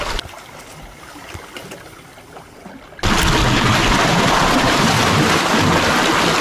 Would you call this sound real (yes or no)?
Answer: yes